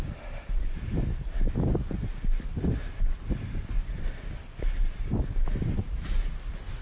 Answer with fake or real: real